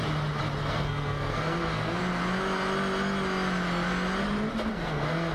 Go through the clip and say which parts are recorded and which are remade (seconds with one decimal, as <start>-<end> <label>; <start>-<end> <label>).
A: 0.0-0.6 recorded; 0.6-2.0 remade; 2.0-4.7 recorded; 4.7-5.3 remade

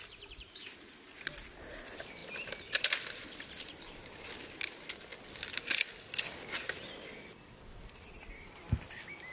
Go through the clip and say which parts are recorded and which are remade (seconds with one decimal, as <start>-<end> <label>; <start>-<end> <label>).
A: 0.0-5.1 recorded; 5.1-7.8 remade; 7.8-9.3 recorded

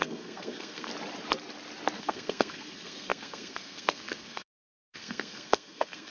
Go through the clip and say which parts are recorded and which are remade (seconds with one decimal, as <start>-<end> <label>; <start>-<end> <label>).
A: 0.0-0.9 remade; 0.9-2.0 recorded; 2.0-6.1 remade

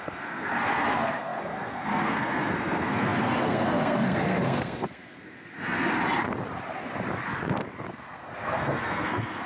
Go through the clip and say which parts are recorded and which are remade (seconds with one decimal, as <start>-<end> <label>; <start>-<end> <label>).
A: 0.0-5.9 remade; 5.9-7.9 recorded; 7.9-9.5 remade

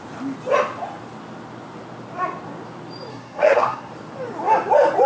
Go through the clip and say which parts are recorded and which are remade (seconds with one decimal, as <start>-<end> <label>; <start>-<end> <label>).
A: 0.0-3.1 recorded; 3.1-3.9 remade; 3.9-5.1 recorded

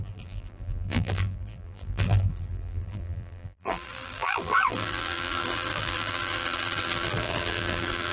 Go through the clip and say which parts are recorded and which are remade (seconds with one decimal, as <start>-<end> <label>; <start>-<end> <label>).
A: 0.0-8.1 remade

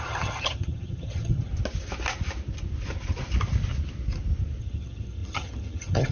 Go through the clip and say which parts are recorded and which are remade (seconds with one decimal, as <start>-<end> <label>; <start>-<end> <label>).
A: 0.0-1.5 remade; 1.5-4.6 recorded; 4.6-6.1 remade